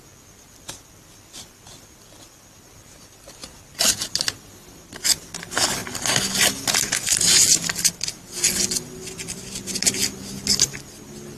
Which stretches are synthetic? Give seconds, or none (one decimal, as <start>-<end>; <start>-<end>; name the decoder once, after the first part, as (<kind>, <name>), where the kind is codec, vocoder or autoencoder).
none